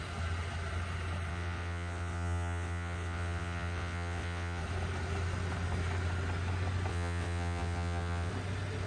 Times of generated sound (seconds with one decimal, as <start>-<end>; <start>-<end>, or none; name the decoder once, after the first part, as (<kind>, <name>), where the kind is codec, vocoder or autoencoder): 1.3-4.6 (vocoder, WaveNeXt); 6.9-8.3